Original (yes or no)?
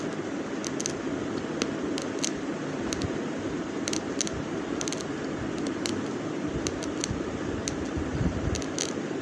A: yes